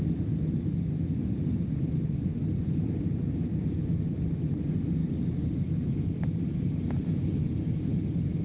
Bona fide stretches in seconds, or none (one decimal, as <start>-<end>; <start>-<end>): 0.0-8.4